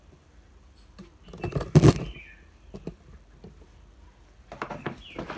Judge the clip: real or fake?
real